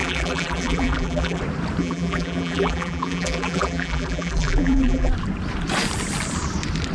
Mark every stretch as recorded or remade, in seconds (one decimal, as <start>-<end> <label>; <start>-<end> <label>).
0.0-1.4 remade; 1.4-1.8 recorded; 1.8-5.1 remade; 5.1-6.9 recorded